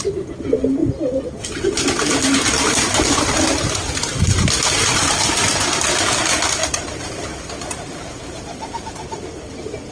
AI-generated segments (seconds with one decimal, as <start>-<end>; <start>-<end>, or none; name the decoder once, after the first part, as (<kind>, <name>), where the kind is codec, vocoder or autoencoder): 6.6-8.4 (vocoder, BigVGAN v2)